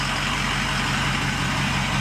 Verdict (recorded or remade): recorded